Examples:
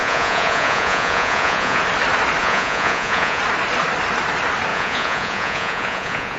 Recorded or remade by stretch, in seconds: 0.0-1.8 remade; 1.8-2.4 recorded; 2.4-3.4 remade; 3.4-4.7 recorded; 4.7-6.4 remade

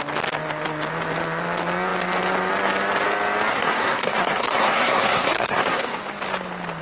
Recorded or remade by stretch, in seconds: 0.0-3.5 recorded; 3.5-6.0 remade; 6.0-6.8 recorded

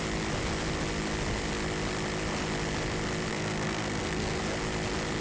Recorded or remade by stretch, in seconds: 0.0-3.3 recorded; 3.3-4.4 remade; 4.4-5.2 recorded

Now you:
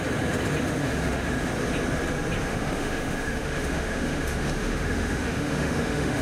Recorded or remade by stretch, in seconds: 0.0-0.8 recorded; 0.8-1.5 remade; 1.5-2.5 recorded; 2.5-6.2 remade

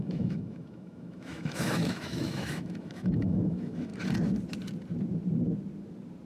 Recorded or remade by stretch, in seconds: 0.0-3.9 remade; 3.9-6.3 recorded

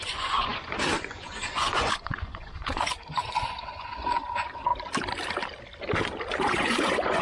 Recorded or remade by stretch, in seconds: 0.0-4.7 remade; 4.7-6.4 recorded; 6.4-7.2 remade

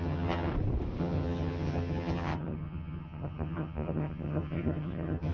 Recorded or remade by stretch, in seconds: 0.0-0.5 remade; 0.5-1.0 recorded; 1.0-5.3 remade

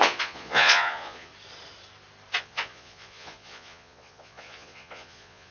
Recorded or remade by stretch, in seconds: 0.0-1.3 remade; 1.3-2.4 recorded; 2.4-5.5 remade